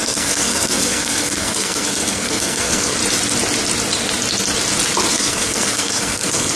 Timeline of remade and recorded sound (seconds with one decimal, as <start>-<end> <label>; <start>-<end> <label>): 0.0-3.0 remade; 3.0-5.1 recorded; 5.1-6.6 remade